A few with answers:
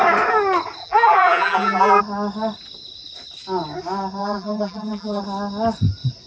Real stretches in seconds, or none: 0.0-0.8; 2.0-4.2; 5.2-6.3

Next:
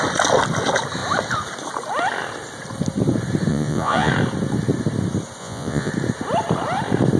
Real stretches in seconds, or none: 0.0-3.5; 4.1-5.4; 5.9-7.2

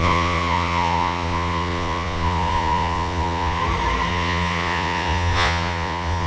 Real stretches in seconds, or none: 3.6-4.1

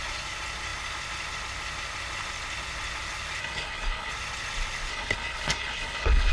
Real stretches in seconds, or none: 0.0-3.4; 4.1-4.9

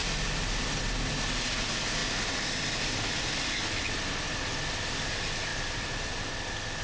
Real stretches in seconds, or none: 0.0-5.5; 6.2-6.8

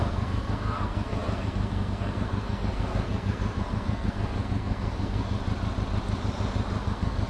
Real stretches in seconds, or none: 5.4-6.8